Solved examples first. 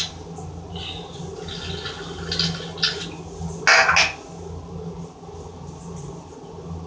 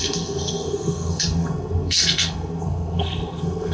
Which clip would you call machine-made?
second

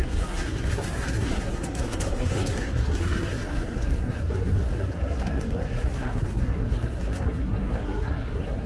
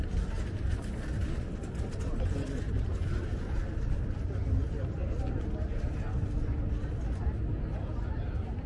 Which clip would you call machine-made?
first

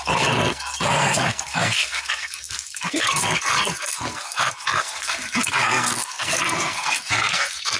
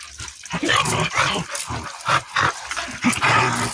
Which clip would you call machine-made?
first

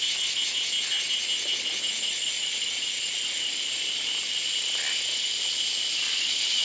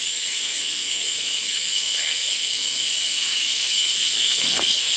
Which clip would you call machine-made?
second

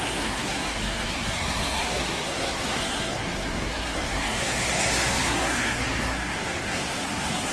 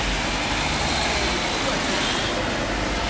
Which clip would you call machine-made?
first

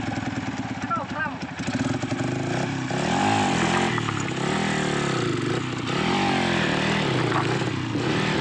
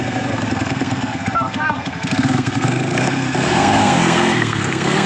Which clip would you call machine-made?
second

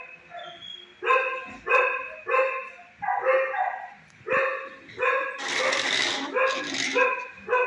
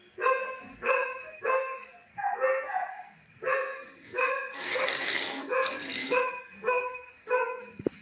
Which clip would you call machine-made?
second